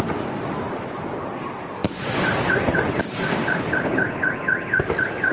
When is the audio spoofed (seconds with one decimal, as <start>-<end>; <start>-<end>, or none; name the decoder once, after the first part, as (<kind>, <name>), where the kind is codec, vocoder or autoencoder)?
none